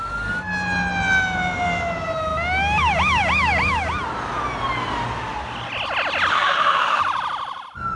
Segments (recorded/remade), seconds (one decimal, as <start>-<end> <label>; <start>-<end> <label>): 0.0-6.3 recorded; 6.3-7.0 remade; 7.0-8.0 recorded